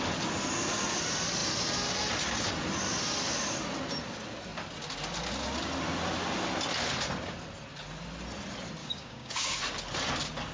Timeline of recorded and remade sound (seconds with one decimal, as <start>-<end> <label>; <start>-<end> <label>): 0.0-8.8 recorded; 8.8-9.6 remade; 9.6-10.5 recorded